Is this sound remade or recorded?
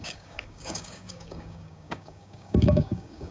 remade